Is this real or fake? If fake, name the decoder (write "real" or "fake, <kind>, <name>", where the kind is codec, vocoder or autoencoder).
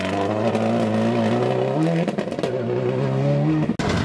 real